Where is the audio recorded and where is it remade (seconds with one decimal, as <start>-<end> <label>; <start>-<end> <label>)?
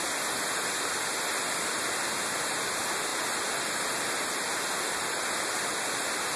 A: 0.0-6.4 recorded